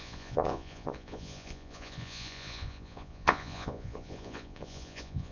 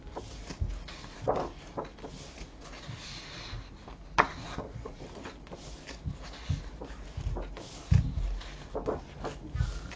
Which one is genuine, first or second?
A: second